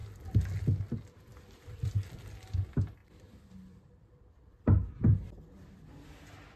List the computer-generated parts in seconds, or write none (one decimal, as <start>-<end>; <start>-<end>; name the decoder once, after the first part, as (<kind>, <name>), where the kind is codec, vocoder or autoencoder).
0.0-0.6 (vocoder, BigVGAN v2); 1.3-1.9; 3.0-5.7

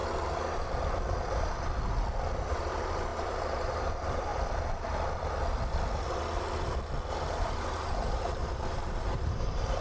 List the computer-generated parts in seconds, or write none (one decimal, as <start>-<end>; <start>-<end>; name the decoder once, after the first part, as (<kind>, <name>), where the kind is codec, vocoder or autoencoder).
2.5-4.3 (vocoder, BigVGAN v2); 7.2-9.8

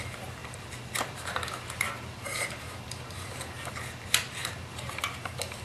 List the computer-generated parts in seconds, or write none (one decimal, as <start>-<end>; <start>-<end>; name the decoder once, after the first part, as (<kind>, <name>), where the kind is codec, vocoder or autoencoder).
none

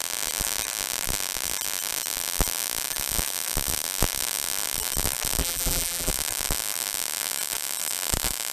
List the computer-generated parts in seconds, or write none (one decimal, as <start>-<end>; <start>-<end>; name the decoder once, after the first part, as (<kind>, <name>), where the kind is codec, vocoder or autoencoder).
5.4-6.1 (vocoder, BigVGAN v2)

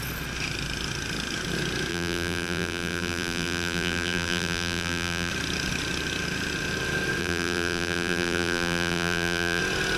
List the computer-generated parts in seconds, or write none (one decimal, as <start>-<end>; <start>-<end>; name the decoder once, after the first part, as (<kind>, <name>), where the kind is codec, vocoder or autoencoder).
1.9-5.3 (vocoder, BigVGAN v2); 7.2-9.6

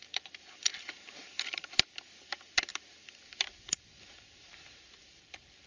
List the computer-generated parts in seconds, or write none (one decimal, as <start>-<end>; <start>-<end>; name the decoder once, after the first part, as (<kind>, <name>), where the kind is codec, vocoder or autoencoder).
0.0-2.0 (vocoder, BigVGAN v2); 2.7-5.7

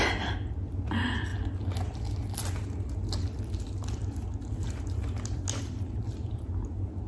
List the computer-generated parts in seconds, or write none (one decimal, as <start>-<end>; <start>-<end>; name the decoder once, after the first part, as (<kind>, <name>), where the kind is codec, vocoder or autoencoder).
none

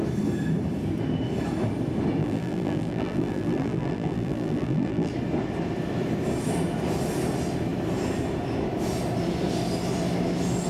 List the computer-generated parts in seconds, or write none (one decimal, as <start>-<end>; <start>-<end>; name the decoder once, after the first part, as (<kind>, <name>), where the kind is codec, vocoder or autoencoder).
2.2-5.1 (vocoder, BigVGAN v2)